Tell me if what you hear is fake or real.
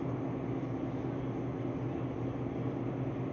real